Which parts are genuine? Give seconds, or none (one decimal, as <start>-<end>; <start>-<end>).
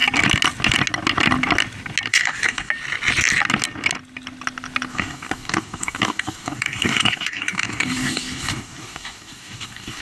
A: 0.0-2.1; 2.7-4.9